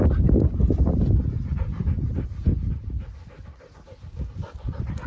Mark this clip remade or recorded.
recorded